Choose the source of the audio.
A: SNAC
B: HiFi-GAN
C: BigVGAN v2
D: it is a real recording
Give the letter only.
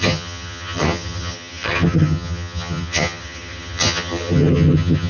B